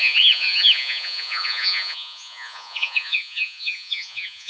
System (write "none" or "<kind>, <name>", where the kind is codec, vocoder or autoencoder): vocoder, Vocos